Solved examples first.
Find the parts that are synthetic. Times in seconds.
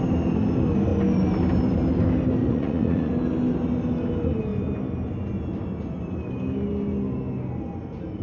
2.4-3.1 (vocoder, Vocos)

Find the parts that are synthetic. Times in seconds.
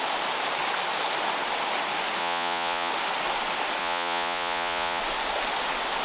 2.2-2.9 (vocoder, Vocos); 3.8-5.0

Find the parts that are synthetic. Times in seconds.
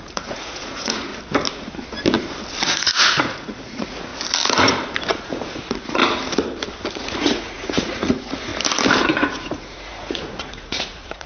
0.0-1.1 (vocoder, Vocos); 2.7-4.1; 5.2-6.0; 6.9-8.5; 9.0-11.3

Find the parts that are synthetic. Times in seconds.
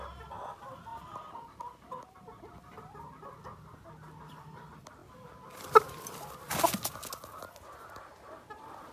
none